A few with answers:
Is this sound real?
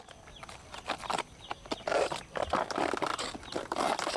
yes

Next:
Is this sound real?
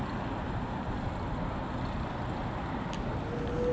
yes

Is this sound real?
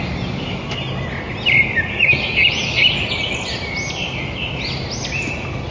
yes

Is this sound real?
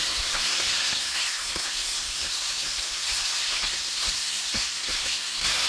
no